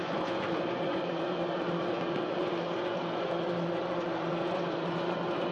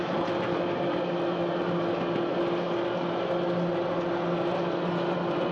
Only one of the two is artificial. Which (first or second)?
first